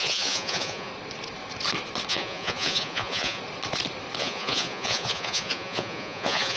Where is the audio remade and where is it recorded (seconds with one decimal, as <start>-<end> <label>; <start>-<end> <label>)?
0.0-0.9 remade; 0.9-2.1 recorded; 2.1-3.4 remade; 3.4-4.2 recorded; 4.2-6.6 remade